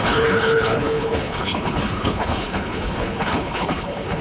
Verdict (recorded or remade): remade